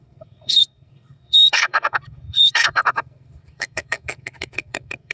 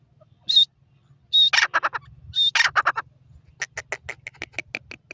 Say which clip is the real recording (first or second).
second